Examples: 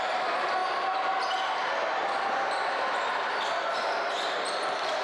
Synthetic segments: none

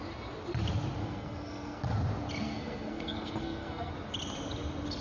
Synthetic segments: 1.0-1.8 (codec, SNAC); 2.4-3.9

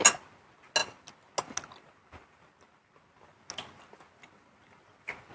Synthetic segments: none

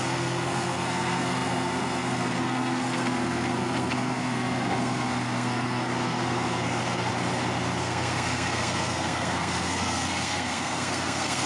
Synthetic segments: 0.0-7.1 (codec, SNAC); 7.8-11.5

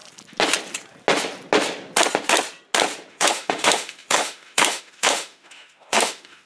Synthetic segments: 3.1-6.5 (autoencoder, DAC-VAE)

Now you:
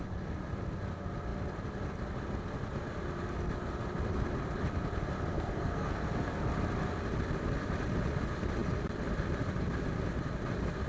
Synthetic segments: 5.3-6.0 (codec, SNAC)

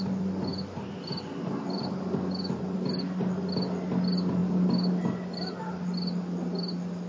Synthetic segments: none